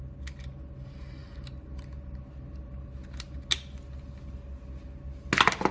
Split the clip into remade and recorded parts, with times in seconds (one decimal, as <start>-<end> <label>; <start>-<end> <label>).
0.0-5.7 recorded